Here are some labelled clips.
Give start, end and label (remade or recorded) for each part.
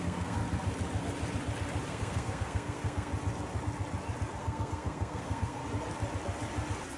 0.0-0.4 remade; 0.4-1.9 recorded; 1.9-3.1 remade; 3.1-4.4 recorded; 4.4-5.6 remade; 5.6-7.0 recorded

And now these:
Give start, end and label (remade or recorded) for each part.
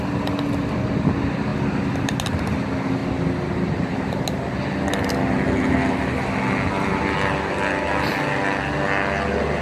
0.0-9.6 recorded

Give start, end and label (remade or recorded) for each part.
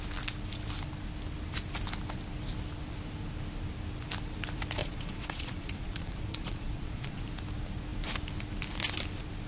0.0-4.8 recorded; 4.8-7.2 remade; 7.2-9.5 recorded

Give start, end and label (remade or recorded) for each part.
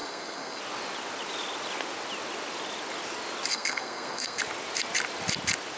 0.0-0.6 remade; 0.6-3.5 recorded; 3.5-4.4 remade; 4.4-5.8 recorded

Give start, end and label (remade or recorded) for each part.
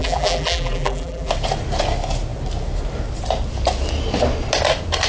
0.0-1.3 remade; 1.3-5.1 recorded